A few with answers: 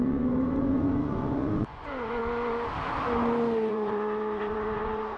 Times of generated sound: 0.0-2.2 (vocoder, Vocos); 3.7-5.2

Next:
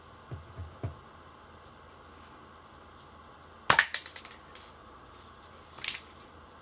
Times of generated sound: 4.8-5.4 (vocoder, Vocos)

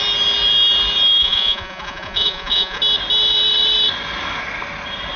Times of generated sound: 1.2-2.8 (vocoder, Vocos)

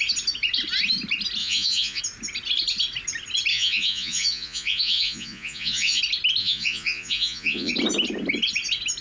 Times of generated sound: 1.4-2.0 (vocoder, Vocos); 3.5-6.0; 6.4-7.7